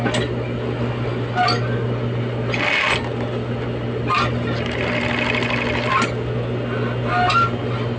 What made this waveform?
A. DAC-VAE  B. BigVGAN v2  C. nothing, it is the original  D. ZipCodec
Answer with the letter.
C